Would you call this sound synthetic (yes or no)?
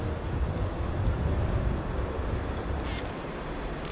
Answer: no